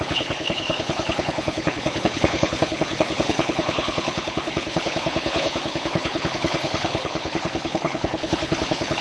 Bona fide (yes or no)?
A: no